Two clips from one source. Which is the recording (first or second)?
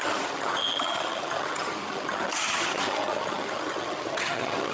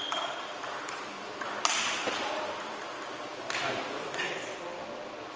second